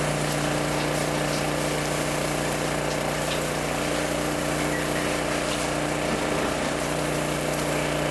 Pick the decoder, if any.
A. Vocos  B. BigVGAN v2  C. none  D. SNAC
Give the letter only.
B